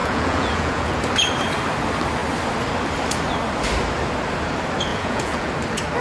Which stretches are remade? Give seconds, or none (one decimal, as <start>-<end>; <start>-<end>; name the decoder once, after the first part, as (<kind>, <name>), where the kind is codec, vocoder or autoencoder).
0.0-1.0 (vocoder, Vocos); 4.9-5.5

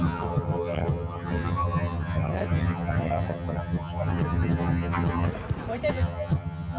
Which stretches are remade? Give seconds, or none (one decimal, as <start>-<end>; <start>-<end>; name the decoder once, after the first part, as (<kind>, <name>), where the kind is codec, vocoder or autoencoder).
0.0-5.3 (vocoder, HiFi-GAN); 5.9-6.8

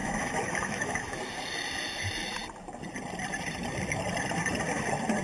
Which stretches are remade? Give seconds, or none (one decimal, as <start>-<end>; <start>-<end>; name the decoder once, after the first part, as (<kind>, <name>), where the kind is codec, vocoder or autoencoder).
0.0-1.2 (autoencoder, DAC-VAE)

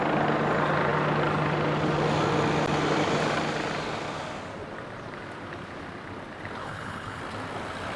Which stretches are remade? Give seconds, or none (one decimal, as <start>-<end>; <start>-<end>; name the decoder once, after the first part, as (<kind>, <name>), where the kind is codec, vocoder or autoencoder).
6.6-7.2 (codec, HILCodec)